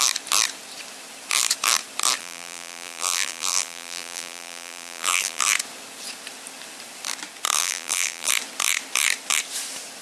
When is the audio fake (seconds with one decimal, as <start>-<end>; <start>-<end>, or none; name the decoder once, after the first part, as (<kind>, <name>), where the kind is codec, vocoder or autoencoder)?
2.2-5.4 (vocoder, BigVGAN v2); 7.6-8.3